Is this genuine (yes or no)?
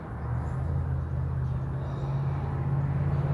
yes